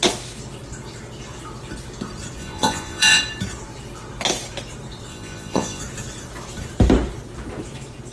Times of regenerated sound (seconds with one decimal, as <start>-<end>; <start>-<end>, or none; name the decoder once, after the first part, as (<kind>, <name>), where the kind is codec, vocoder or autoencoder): 2.4-3.2 (vocoder, Vocos); 5.1-5.8